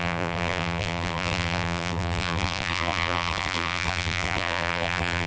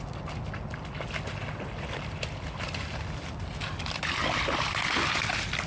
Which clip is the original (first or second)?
second